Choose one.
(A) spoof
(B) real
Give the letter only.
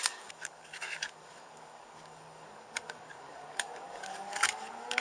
A